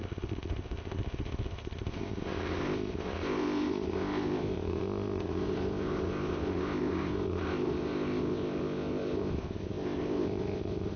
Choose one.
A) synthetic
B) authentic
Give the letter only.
A